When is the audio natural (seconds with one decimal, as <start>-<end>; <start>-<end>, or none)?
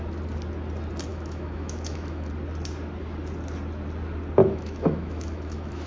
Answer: 0.0-1.1; 2.3-4.4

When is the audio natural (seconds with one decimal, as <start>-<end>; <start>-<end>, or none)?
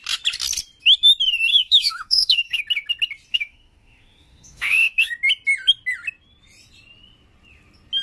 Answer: 0.0-1.5; 2.6-3.3; 5.1-8.0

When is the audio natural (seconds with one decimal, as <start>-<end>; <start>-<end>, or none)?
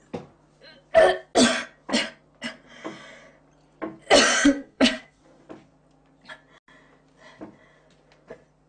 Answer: 0.0-4.3; 5.2-8.7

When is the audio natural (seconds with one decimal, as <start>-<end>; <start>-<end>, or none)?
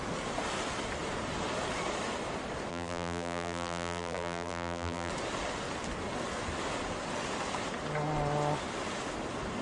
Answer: 0.0-2.7; 5.1-9.6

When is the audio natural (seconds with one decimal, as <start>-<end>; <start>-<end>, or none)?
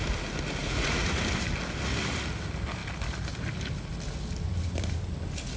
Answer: 0.0-0.6; 1.2-5.6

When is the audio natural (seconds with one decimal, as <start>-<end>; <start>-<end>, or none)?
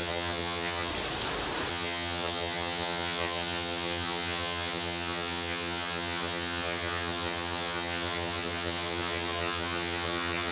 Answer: 0.9-1.7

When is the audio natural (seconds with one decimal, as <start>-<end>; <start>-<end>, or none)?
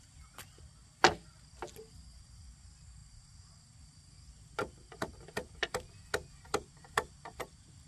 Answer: 0.0-7.9